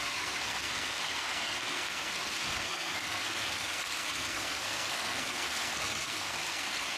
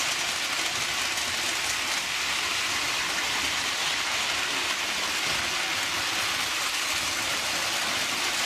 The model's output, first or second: first